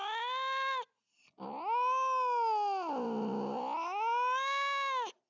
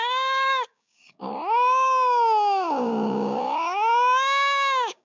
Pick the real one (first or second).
first